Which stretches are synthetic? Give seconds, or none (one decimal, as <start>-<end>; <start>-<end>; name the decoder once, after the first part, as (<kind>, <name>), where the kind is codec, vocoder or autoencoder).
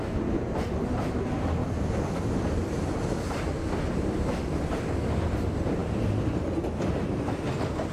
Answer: none